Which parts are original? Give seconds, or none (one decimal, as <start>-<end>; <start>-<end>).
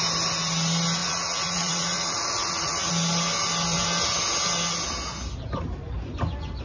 0.0-1.0; 2.9-6.6